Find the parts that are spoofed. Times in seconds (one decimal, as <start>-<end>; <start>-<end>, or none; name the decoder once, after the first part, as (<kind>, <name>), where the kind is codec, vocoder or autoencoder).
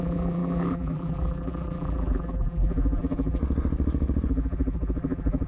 0.0-3.4 (vocoder, BigVGAN v2); 4.3-5.5